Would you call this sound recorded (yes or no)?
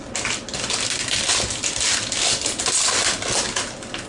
yes